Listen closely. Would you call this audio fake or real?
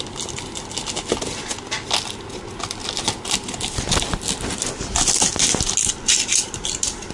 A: real